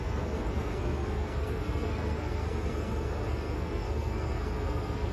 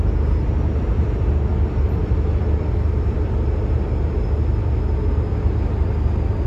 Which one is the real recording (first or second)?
second